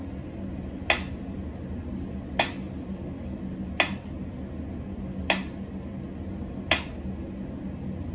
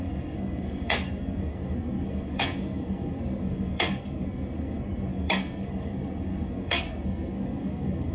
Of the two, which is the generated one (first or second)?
second